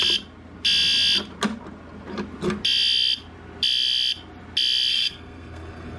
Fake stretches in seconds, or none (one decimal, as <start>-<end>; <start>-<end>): 4.9-6.0